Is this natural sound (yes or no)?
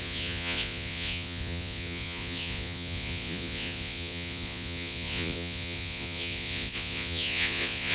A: no